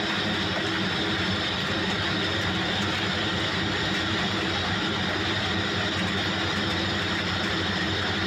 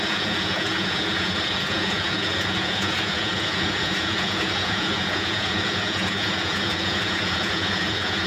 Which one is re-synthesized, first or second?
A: second